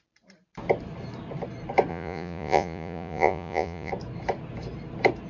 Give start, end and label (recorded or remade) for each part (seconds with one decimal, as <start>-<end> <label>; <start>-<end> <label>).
0.0-1.9 recorded; 1.9-3.9 remade; 3.9-5.3 recorded

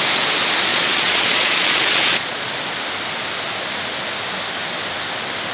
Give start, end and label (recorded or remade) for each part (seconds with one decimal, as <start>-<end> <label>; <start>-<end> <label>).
0.0-0.7 recorded; 0.7-2.5 remade; 2.5-5.5 recorded

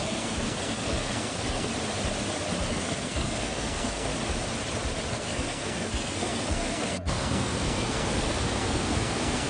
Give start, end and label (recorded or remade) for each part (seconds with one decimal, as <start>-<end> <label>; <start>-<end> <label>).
0.0-1.7 remade; 1.7-2.7 recorded; 2.7-4.1 remade; 4.1-5.1 recorded; 5.1-9.5 remade

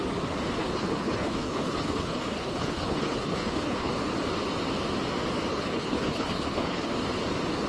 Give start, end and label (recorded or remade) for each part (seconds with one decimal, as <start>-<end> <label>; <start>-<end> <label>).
0.0-0.6 recorded; 0.6-3.9 remade; 3.9-5.5 recorded; 5.5-6.9 remade; 6.9-7.7 recorded

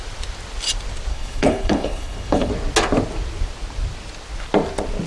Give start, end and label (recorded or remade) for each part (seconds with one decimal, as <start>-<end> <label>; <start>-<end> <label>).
0.0-1.1 recorded; 1.1-2.5 remade; 2.5-5.1 recorded

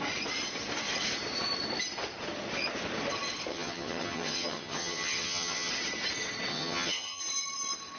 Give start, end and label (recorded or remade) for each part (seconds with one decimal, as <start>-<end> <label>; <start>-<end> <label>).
0.0-3.5 recorded; 3.5-5.7 remade; 5.7-6.5 recorded; 6.5-7.2 remade; 7.2-8.0 recorded